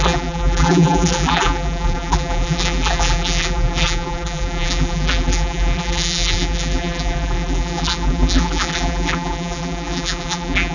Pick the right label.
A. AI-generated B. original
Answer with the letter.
A